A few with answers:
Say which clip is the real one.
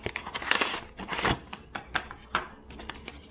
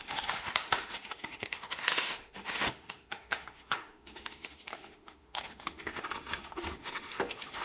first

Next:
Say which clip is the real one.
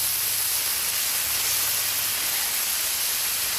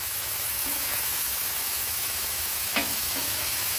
first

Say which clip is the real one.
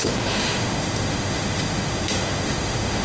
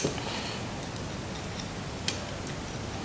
second